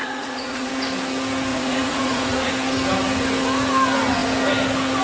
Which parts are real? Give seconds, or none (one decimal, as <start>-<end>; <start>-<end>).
0.7-1.5; 2.5-5.0